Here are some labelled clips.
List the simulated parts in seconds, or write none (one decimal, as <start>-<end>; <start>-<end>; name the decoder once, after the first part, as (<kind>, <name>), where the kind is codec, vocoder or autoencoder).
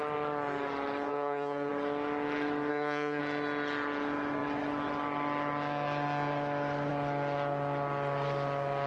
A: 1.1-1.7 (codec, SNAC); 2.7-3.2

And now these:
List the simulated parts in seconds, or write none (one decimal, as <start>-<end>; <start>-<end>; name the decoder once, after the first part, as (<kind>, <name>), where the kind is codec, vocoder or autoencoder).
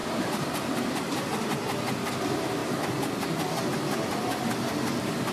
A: 0.0-1.3 (vocoder, BigVGAN v2)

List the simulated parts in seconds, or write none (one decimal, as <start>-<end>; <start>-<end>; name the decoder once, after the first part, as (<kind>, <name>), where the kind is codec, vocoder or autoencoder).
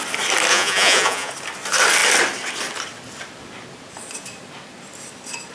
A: 0.5-1.3 (vocoder, Vocos)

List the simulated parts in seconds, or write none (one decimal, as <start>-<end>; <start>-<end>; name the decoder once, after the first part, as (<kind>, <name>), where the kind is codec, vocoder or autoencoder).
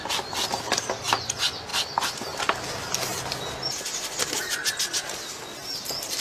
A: none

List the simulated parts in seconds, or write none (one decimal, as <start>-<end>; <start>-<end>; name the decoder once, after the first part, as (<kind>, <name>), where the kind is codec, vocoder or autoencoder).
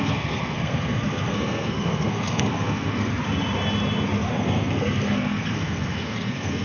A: 0.0-3.1 (codec, SNAC); 4.3-6.6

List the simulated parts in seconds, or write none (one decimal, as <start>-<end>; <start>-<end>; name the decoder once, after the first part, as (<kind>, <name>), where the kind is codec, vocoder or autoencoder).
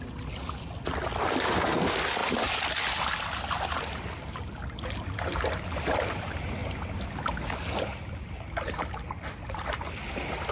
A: none